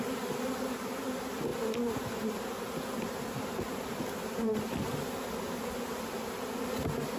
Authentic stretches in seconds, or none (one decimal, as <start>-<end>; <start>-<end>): 0.0-7.2